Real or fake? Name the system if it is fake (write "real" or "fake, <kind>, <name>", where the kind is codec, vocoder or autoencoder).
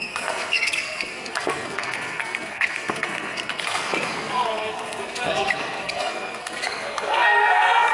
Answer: fake, codec, SNAC